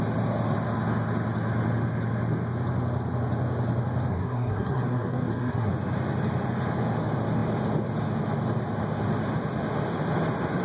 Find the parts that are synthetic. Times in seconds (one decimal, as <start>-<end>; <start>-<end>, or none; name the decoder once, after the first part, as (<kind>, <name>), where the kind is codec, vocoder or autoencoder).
4.1-5.7 (codec, SNAC)